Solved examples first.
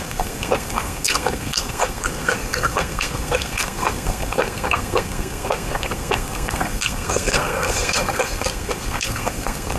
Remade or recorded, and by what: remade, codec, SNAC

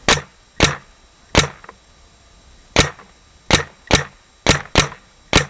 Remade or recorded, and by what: recorded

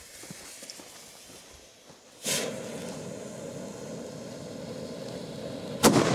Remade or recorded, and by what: recorded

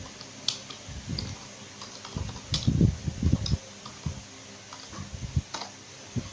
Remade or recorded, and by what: recorded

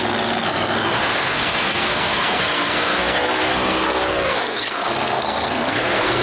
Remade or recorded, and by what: remade, codec, SNAC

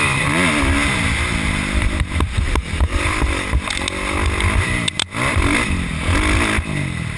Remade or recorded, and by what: recorded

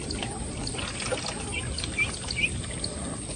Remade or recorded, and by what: recorded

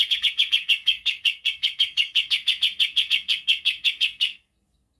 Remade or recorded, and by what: remade, codec, SNAC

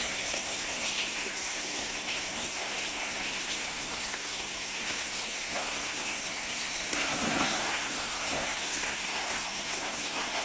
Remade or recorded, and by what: remade, codec, SNAC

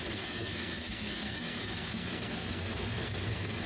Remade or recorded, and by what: remade, codec, SNAC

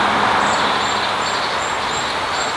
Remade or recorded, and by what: recorded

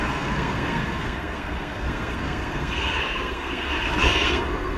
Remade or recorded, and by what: remade, codec, SNAC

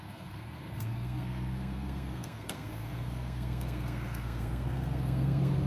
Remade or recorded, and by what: remade, codec, SNAC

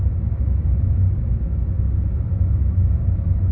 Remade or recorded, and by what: recorded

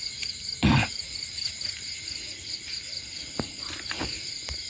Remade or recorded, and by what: recorded